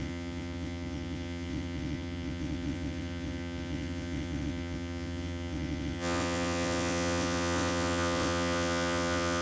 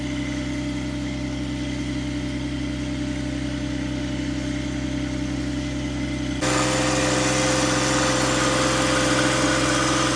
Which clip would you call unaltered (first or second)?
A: second